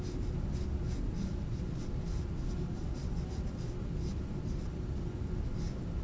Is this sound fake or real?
real